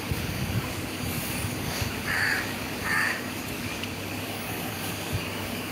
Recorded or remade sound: remade